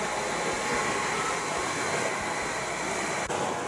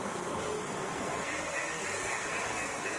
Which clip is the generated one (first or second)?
second